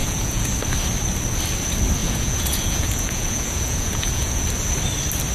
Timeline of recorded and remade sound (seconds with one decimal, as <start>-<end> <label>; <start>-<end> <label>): 0.0-0.5 remade; 0.5-2.0 recorded; 2.0-4.4 remade; 4.4-5.3 recorded